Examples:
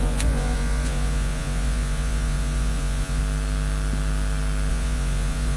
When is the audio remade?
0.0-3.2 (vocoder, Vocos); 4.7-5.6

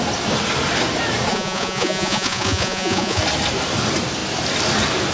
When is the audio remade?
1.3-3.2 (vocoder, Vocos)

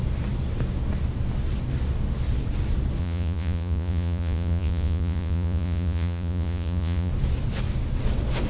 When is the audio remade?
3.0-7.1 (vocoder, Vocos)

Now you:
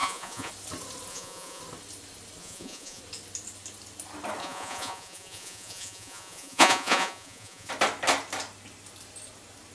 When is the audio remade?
0.0-0.5 (vocoder, Vocos); 1.1-1.6; 2.4-3.0; 4.4-7.7

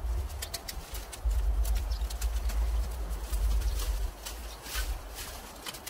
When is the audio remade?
none